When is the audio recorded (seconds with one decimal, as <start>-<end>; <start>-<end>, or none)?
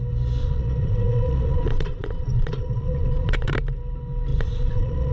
0.0-0.4; 3.5-4.3